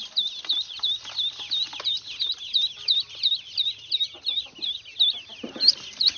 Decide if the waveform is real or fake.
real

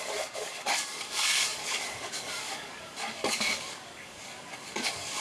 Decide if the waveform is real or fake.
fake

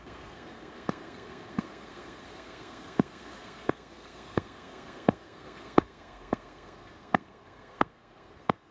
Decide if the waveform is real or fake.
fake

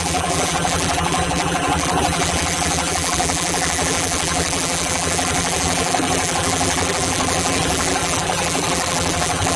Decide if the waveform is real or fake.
fake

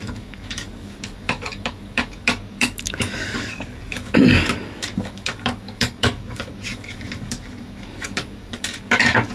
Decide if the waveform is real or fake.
fake